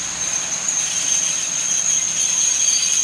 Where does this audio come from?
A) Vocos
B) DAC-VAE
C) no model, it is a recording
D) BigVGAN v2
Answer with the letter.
C